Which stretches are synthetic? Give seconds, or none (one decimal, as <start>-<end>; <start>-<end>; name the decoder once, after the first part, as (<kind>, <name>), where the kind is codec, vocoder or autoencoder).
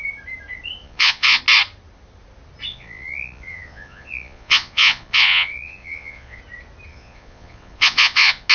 0.8-1.4 (vocoder, Vocos); 2.7-6.4; 6.9-8.5